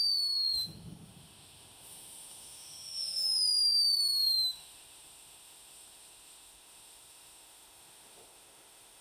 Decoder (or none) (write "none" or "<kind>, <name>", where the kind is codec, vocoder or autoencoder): autoencoder, DAC-VAE